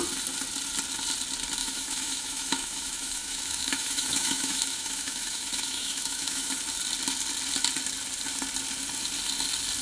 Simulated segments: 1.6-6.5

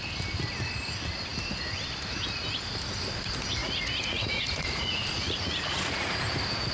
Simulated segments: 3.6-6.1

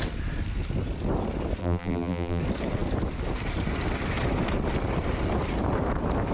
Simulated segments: 1.6-2.4

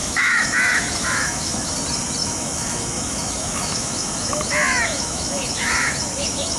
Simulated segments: 0.0-1.7; 2.2-6.6